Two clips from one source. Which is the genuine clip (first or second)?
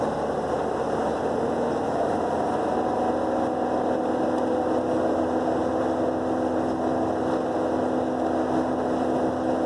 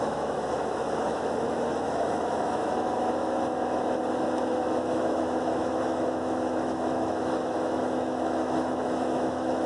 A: first